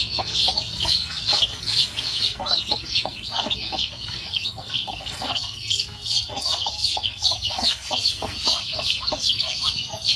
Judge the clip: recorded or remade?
remade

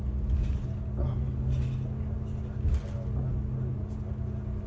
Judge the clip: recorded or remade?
recorded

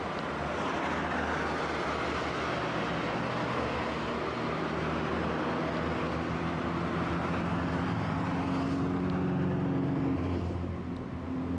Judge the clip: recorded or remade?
recorded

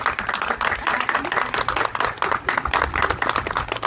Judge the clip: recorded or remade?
recorded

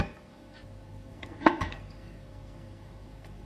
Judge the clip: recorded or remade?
remade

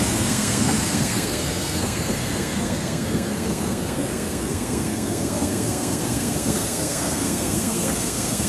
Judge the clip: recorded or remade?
remade